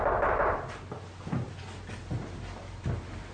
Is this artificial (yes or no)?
no